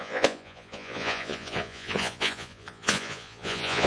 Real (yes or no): no